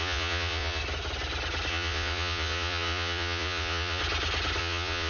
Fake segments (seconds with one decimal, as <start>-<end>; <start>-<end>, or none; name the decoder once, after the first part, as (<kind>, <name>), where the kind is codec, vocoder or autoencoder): 0.0-0.8 (vocoder, Vocos); 1.7-4.0; 4.6-5.1